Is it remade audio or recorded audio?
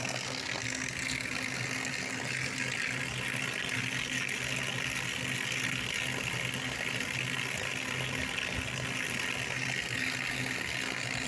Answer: recorded